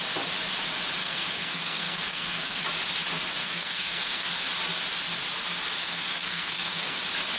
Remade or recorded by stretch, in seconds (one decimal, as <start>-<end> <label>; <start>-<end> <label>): 0.0-1.0 recorded; 1.0-2.6 remade; 2.6-3.4 recorded; 3.4-4.3 remade; 4.3-5.8 recorded; 5.8-7.0 remade; 7.0-7.4 recorded

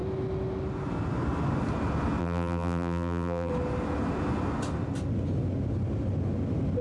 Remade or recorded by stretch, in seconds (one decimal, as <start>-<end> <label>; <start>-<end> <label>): 0.0-2.2 recorded; 2.2-3.5 remade; 3.5-6.8 recorded